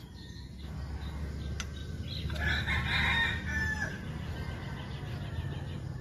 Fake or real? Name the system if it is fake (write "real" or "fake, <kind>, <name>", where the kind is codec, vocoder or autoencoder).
real